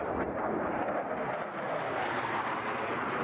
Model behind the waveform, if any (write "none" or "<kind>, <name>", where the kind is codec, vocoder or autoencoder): none